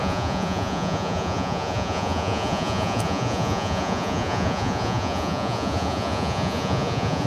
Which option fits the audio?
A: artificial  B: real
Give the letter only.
A